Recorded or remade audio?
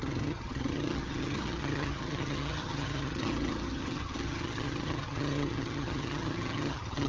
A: remade